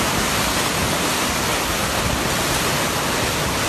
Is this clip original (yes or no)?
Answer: yes